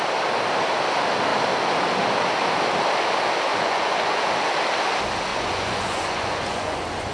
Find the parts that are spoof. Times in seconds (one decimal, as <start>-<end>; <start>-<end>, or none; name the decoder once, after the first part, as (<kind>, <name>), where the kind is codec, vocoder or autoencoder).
3.5-4.3 (vocoder, Vocos); 5.3-7.1